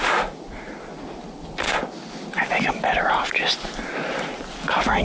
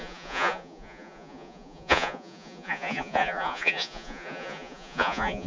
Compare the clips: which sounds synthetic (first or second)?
second